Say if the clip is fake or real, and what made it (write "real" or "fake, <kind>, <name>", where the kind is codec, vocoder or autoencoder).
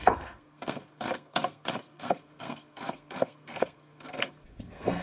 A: fake, codec, SNAC